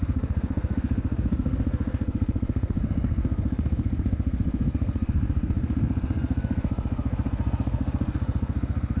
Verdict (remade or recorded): remade